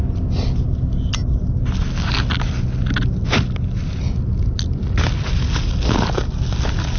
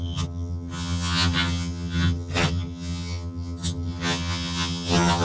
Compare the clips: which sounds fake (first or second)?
second